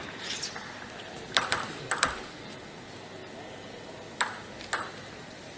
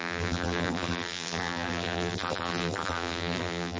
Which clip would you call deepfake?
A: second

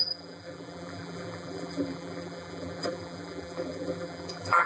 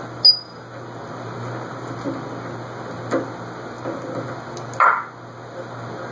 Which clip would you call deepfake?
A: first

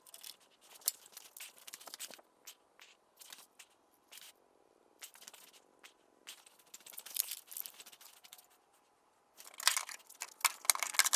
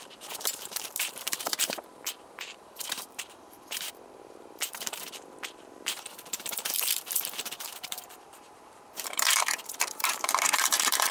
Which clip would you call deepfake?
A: second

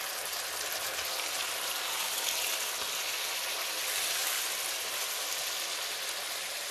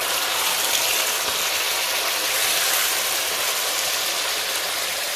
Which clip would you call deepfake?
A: second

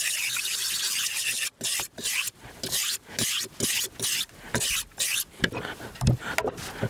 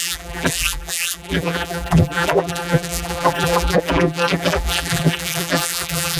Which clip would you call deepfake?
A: second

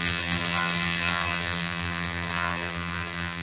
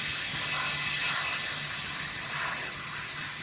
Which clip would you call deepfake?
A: first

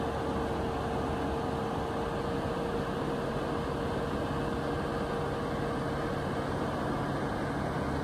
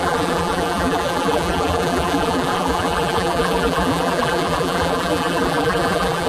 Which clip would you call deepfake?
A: second